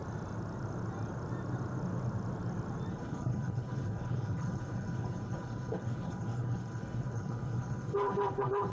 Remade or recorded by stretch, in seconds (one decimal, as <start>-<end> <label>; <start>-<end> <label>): 0.0-2.9 recorded; 2.9-8.7 remade